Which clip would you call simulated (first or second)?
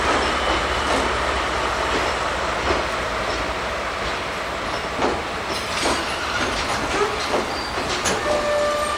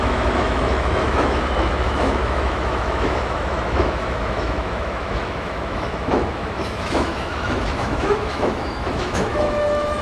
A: second